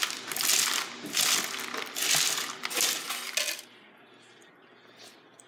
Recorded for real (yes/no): yes